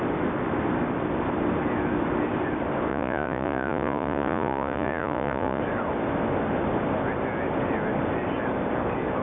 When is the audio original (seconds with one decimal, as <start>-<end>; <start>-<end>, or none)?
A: 0.0-2.9; 5.6-9.2

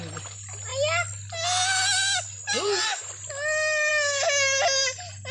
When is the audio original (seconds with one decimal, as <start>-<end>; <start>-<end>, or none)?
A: 0.0-5.3

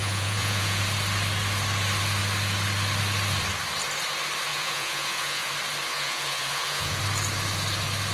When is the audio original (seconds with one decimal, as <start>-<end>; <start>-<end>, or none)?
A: 0.8-4.5; 5.5-5.9; 7.0-8.1

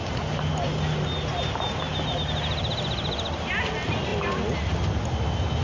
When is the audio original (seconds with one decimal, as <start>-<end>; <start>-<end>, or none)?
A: 0.0-5.6

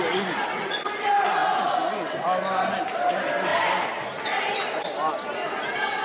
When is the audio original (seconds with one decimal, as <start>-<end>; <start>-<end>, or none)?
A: 0.0-6.0

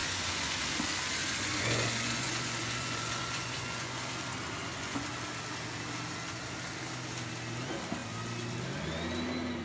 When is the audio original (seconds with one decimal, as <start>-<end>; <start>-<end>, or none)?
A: 0.6-1.2; 4.1-4.6; 5.1-9.6